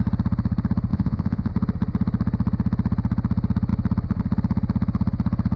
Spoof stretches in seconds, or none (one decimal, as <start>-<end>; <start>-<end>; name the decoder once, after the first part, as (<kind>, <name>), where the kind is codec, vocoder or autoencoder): 0.9-1.5 (vocoder, Vocos)